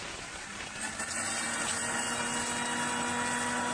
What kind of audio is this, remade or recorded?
recorded